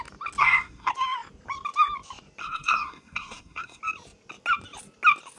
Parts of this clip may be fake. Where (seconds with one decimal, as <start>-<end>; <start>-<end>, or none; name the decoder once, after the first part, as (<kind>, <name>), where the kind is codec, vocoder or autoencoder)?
0.4-0.9 (codec, SNAC); 2.4-3.8